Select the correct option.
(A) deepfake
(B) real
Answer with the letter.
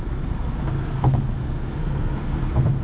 A